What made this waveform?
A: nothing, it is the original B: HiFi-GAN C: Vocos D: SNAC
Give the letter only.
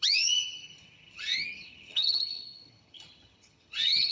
B